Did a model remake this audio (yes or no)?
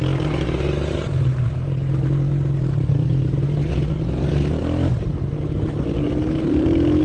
no